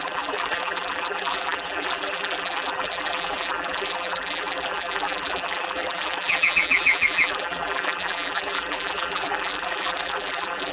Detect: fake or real fake